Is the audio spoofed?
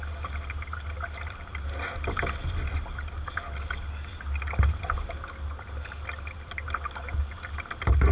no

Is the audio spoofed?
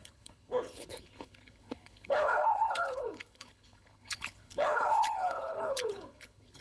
yes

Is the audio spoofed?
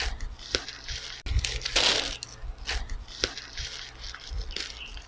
no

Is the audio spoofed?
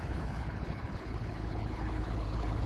yes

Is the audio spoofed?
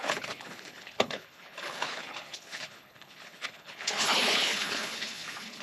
yes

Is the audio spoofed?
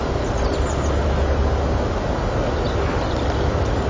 no